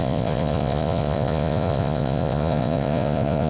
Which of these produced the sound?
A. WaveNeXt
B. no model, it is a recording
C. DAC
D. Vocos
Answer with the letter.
D